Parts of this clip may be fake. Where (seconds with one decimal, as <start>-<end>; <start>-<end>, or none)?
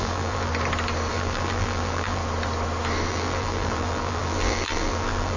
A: 0.0-0.5; 1.1-2.2; 3.1-5.4